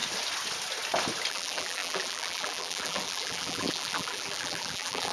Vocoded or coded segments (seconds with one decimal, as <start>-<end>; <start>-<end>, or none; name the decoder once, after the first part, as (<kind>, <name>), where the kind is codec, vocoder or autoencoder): 1.3-5.1 (vocoder, BigVGAN v2)